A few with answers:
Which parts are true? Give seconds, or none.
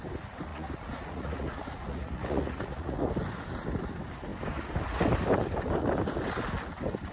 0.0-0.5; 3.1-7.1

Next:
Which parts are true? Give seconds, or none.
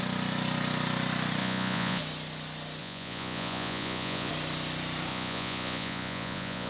0.0-1.4; 2.0-2.8; 4.3-5.1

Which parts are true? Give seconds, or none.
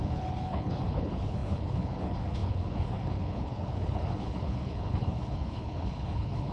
none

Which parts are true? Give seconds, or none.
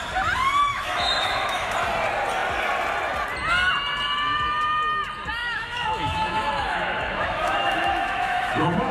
0.0-0.7; 1.7-5.4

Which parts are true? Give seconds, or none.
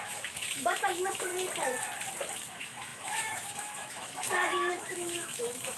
1.3-2.5